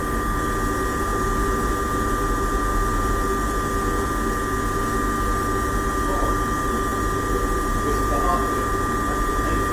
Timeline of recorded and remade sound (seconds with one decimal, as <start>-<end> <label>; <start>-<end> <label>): 0.0-9.7 recorded